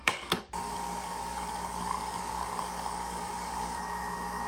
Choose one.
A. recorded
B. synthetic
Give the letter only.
B